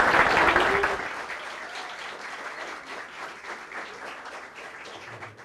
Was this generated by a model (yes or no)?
no